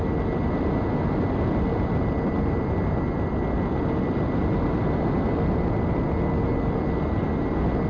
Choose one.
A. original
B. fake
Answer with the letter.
A